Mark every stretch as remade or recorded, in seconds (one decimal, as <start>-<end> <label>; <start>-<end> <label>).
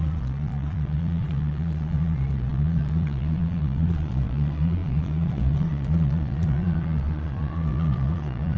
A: 0.0-8.6 remade